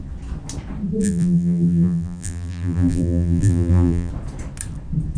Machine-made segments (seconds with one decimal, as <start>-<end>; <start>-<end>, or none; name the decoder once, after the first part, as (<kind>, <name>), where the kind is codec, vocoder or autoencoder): 1.0-4.1 (vocoder, BigVGAN v2)